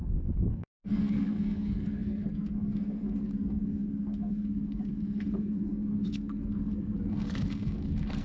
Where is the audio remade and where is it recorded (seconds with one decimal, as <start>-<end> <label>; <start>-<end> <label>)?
0.0-8.2 remade